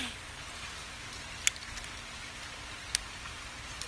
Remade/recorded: recorded